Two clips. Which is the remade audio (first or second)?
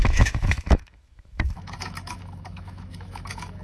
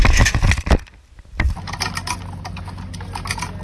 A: first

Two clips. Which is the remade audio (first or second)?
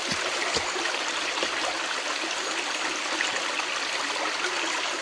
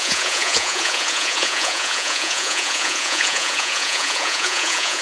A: second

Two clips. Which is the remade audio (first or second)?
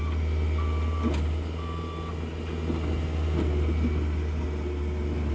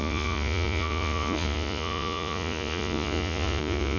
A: second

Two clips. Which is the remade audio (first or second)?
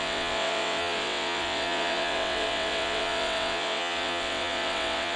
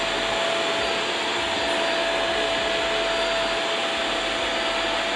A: first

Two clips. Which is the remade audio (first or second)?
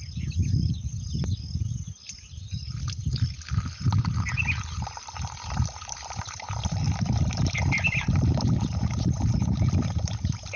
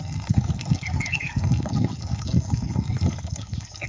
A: second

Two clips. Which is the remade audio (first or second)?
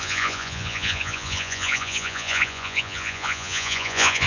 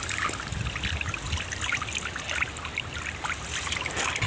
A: first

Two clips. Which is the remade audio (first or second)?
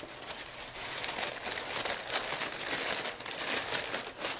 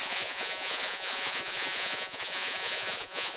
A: second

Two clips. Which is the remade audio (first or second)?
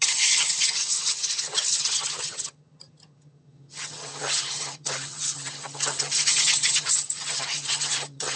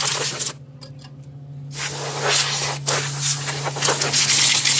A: first